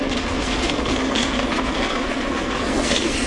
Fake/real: fake